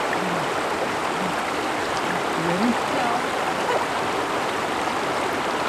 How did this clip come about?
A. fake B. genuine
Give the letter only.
B